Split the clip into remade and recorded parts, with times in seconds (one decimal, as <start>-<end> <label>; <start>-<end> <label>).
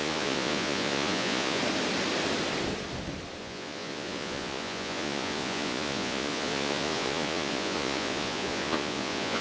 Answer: 0.0-1.6 remade; 1.6-3.4 recorded; 3.4-9.4 remade